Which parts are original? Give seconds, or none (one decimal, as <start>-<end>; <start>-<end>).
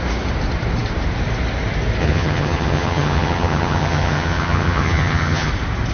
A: 0.0-2.0; 5.5-5.9